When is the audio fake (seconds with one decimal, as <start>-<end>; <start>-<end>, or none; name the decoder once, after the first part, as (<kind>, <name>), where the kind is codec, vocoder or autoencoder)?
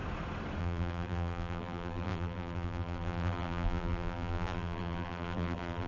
0.6-5.9 (vocoder, BigVGAN v2)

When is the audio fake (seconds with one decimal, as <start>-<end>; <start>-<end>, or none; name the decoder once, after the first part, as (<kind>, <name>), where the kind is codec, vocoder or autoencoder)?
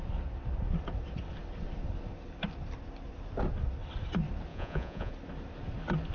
4.5-5.1 (vocoder, Vocos)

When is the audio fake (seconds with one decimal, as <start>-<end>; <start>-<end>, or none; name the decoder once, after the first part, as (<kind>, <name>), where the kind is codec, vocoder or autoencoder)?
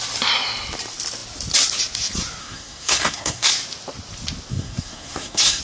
2.4-3.5 (codec, SNAC); 4.5-5.6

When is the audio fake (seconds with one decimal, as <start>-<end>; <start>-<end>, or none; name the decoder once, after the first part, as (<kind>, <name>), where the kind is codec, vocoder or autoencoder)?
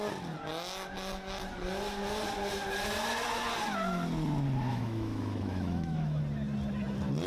4.7-6.2 (autoencoder, DAC-VAE)